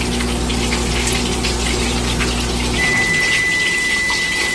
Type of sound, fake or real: real